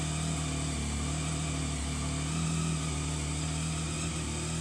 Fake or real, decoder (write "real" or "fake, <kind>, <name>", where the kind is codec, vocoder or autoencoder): real